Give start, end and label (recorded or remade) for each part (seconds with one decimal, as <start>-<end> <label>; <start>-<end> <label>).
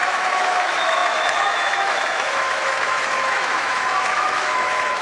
0.0-5.0 remade